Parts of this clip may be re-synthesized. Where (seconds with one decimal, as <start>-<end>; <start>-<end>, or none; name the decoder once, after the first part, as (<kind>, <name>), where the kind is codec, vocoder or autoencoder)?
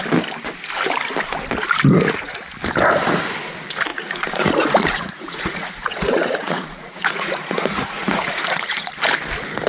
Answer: 3.9-8.9 (vocoder, Vocos)